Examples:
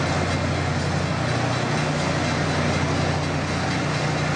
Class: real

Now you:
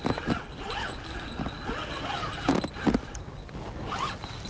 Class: fake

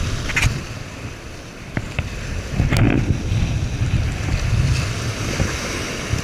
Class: real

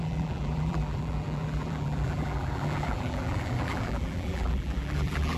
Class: fake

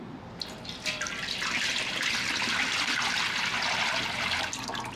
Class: real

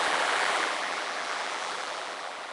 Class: fake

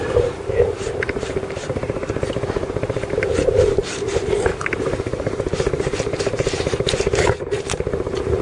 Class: fake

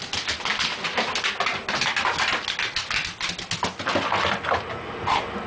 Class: real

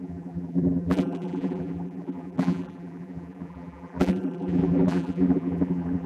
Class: fake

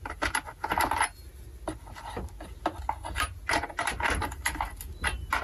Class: real